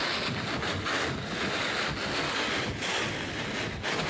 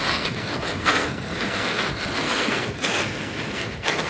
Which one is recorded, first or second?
first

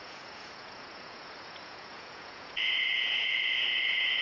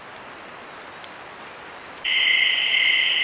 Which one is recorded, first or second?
second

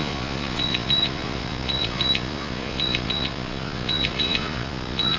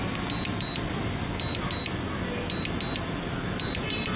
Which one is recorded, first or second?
second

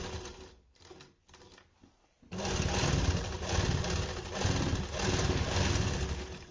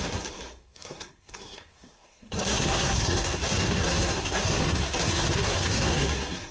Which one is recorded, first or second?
first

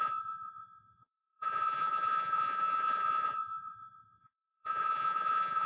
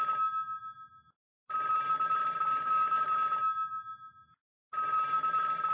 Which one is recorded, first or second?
second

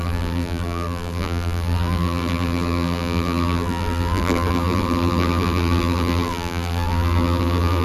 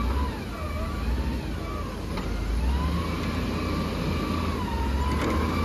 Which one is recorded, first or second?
second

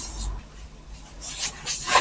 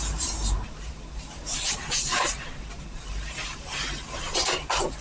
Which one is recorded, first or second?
first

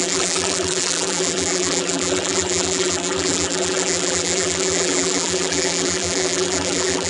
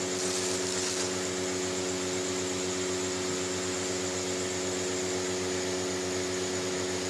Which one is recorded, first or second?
second